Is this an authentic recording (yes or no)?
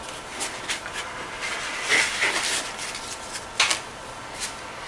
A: yes